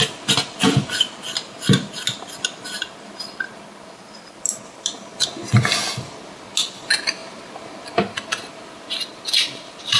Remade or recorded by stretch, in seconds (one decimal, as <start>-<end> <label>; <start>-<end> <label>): 0.0-10.0 recorded